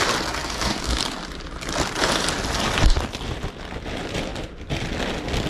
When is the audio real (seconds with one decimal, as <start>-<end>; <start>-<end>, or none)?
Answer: 0.0-0.4; 1.0-5.5